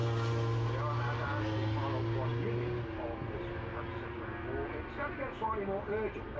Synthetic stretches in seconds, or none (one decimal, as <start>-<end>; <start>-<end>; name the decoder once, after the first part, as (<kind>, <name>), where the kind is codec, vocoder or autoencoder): none

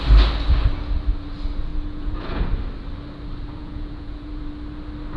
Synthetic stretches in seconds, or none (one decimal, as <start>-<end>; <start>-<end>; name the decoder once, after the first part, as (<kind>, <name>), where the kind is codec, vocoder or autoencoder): 1.7-2.5 (vocoder, Vocos); 3.6-4.4

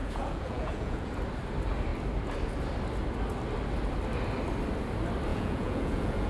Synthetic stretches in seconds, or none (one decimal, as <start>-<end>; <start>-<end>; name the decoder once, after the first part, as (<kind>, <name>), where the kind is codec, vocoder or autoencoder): 0.0-1.1 (vocoder, Vocos); 5.3-6.3

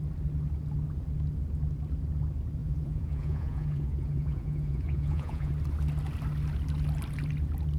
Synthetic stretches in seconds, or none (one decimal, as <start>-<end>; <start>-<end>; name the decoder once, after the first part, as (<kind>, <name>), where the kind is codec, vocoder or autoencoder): 2.6-5.5 (vocoder, Vocos)